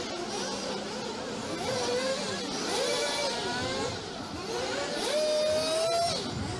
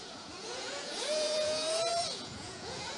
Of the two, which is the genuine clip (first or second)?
first